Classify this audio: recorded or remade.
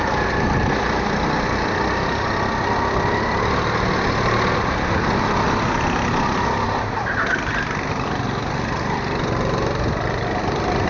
recorded